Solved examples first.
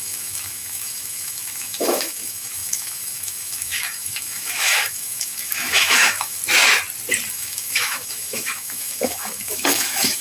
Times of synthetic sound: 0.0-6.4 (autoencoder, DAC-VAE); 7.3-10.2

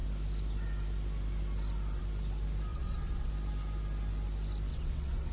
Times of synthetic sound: 2.7-3.3 (vocoder, WaveNeXt); 4.7-5.3

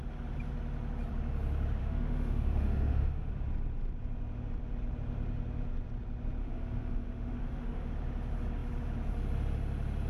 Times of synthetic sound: 1.8-3.3 (autoencoder, DAC-VAE); 6.4-7.9

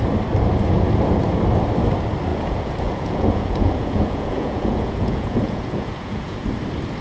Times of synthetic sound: 2.3-6.5 (vocoder, Vocos)

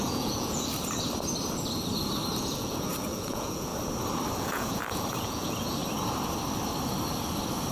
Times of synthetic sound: 0.0-0.7 (vocoder, Vocos); 2.4-3.7; 4.3-5.8

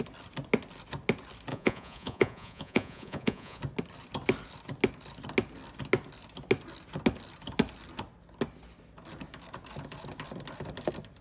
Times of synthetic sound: 1.5-3.6 (vocoder, Vocos)

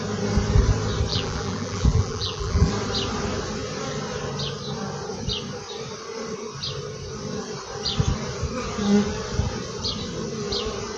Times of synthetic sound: 1.1-2.7 (vocoder, BigVGAN v2)

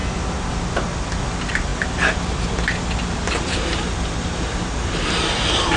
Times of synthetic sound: none